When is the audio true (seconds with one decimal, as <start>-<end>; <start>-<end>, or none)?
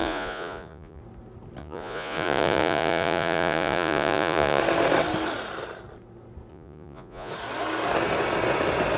1.0-1.6; 4.6-6.5; 7.3-9.0